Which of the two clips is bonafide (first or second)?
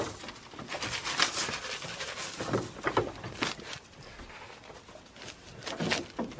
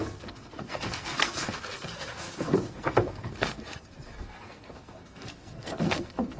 first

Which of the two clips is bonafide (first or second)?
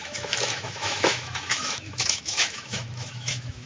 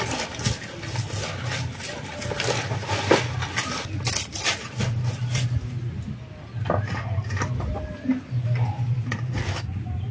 second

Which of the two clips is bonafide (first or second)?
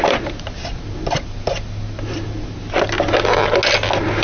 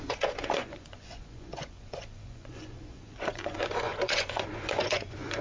first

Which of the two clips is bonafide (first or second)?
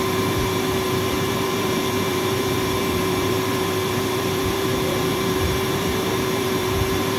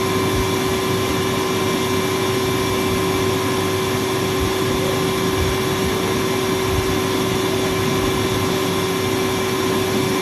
second